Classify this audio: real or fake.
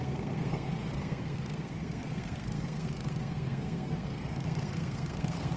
fake